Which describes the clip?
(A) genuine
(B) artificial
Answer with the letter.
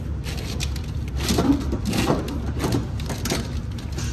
A